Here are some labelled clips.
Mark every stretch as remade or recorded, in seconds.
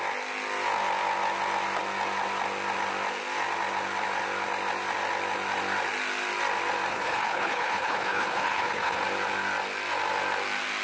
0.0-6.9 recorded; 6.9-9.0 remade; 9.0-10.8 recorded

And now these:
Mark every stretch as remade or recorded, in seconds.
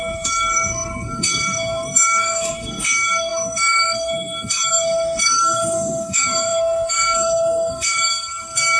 0.0-8.8 remade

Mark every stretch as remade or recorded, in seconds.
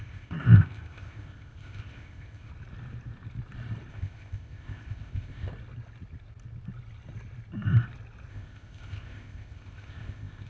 0.0-2.5 remade; 2.5-3.9 recorded; 3.9-5.5 remade; 5.5-8.3 recorded; 8.3-10.5 remade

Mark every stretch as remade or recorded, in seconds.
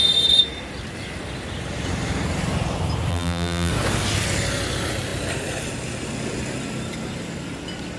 0.0-3.1 recorded; 3.1-3.7 remade; 3.7-8.0 recorded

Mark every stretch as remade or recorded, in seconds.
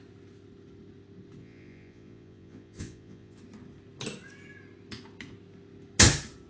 0.0-1.4 recorded; 1.4-3.4 remade; 3.4-6.5 recorded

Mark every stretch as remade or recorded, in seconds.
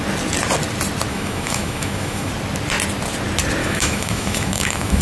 0.0-1.1 recorded; 1.1-2.3 remade; 2.3-3.6 recorded; 3.6-5.0 remade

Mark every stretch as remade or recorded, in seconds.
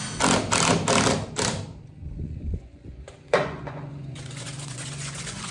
0.0-2.0 recorded; 2.0-5.5 remade